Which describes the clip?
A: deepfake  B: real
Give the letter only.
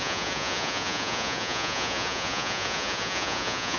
A